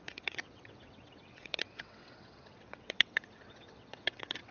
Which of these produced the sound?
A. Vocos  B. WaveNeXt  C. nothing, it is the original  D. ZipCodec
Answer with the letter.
B